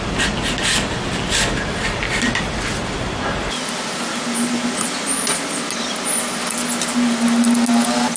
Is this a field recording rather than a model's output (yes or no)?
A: yes